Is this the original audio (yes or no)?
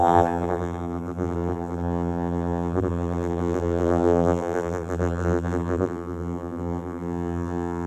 no